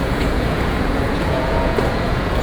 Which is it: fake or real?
fake